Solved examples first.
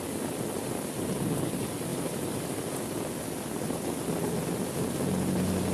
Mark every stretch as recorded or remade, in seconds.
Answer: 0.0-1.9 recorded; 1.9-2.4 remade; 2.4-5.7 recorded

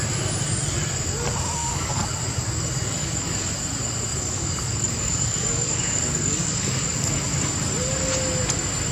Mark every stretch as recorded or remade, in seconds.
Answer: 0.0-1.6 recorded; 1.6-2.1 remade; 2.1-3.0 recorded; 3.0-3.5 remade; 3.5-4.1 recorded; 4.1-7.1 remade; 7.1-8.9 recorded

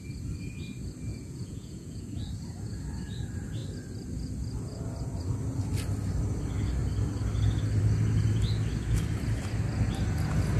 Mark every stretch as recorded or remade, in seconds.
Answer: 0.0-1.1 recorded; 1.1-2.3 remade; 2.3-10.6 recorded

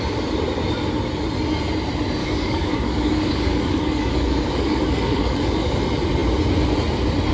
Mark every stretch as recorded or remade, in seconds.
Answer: 0.0-2.2 recorded; 2.2-5.8 remade; 5.8-7.3 recorded

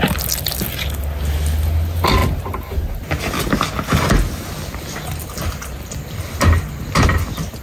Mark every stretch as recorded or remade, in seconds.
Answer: 0.0-7.6 recorded